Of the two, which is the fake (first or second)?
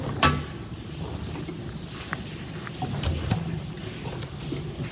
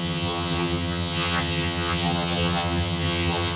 second